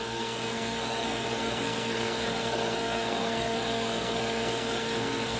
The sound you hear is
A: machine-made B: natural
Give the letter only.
A